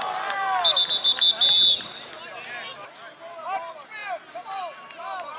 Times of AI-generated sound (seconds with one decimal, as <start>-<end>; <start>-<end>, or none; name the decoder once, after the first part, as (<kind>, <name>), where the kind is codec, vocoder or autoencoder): none

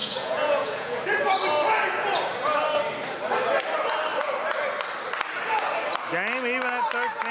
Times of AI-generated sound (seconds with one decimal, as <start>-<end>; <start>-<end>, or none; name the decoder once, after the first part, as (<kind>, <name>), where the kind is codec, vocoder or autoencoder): 0.0-1.0 (vocoder, Vocos)

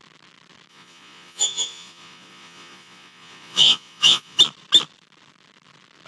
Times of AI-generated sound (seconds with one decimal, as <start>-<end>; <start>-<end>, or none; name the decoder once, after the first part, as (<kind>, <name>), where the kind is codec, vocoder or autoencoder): 0.7-4.4 (vocoder, Vocos)

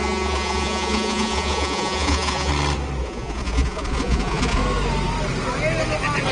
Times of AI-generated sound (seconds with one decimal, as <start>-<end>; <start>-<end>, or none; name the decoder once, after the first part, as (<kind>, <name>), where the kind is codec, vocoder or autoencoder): 0.0-2.5 (vocoder, Vocos); 3.0-4.6